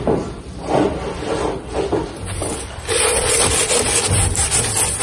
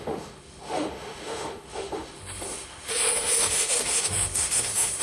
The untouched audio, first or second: first